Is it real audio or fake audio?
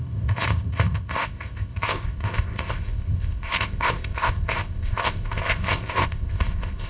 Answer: fake